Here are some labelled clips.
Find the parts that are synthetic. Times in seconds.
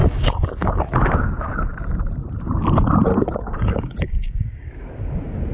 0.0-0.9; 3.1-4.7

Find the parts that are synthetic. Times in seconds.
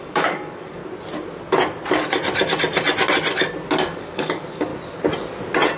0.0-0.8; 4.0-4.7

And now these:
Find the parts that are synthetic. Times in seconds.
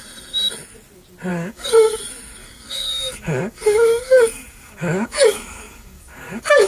1.3-2.0; 2.4-6.7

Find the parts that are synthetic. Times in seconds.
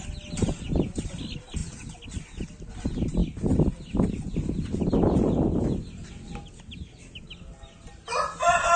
none